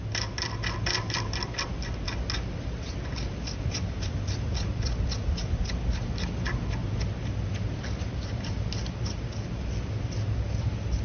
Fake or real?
real